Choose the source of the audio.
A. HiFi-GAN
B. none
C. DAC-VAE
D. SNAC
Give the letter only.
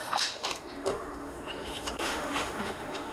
C